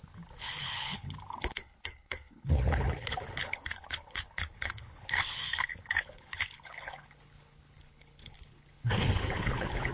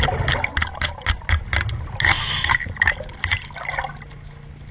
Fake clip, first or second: first